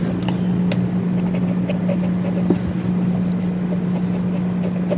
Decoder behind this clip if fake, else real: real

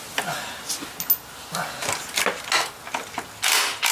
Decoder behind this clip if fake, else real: real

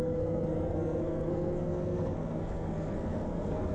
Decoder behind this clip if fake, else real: fake, codec, SNAC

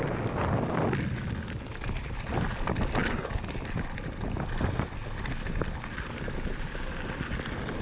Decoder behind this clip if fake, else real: real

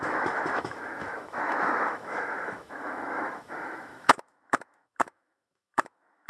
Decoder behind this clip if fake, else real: fake, autoencoder, DAC-VAE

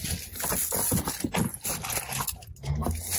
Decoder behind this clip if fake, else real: real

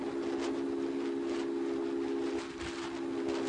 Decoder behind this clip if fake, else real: real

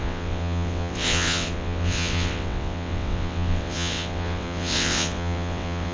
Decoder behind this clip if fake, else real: fake, vocoder, WaveNeXt